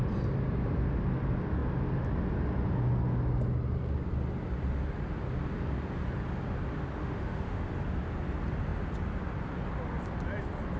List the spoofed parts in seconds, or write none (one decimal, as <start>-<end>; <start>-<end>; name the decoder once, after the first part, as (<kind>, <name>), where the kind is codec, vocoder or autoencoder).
7.0-7.6 (autoencoder, DAC-VAE)